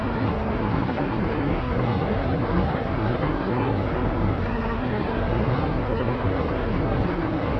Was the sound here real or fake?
fake